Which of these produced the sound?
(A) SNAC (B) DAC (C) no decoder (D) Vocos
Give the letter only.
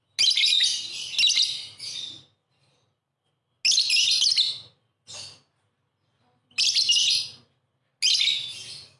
C